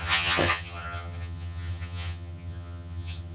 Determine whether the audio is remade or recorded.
remade